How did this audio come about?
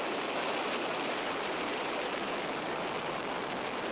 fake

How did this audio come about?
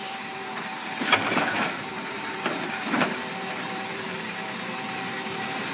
fake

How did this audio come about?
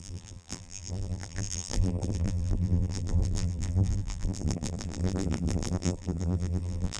fake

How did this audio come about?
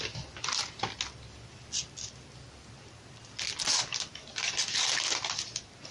real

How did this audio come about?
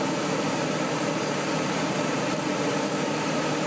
fake